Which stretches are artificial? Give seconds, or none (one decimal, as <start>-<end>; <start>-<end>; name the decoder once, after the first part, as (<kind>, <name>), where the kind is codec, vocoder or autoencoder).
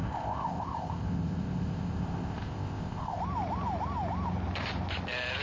0.0-3.2 (codec, ZipCodec)